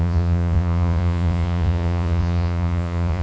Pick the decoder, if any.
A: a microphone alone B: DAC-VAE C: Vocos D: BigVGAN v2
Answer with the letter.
C